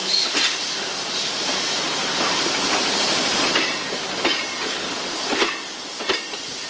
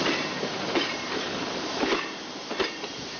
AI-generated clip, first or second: second